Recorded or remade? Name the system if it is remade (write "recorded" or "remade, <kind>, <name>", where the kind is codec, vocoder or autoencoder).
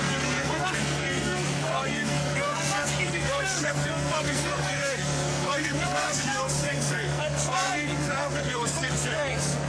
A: remade, codec, SNAC